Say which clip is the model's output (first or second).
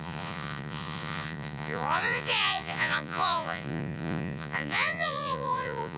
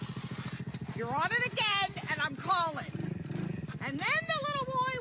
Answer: first